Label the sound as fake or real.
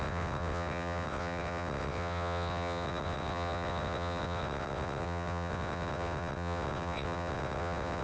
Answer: fake